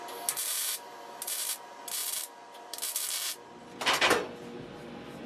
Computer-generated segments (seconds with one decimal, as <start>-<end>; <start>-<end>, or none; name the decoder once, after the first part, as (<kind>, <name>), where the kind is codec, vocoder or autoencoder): none